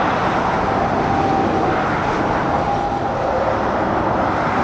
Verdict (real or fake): real